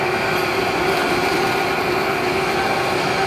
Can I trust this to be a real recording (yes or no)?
yes